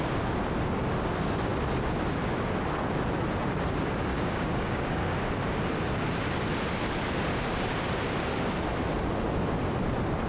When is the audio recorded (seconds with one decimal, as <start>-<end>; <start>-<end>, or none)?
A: 0.0-4.1; 5.3-10.3